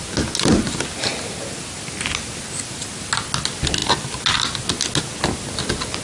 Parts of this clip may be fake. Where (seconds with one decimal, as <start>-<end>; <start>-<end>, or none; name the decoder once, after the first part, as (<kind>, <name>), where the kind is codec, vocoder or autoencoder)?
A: none